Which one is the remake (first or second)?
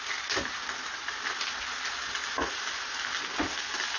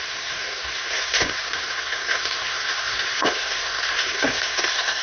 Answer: second